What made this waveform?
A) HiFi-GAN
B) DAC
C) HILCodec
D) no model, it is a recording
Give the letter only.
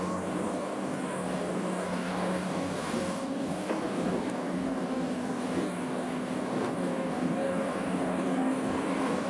B